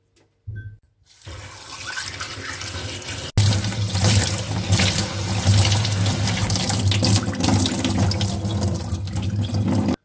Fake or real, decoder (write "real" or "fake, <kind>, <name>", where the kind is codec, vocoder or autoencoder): real